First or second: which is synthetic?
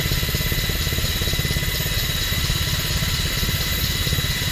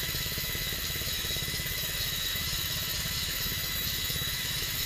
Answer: second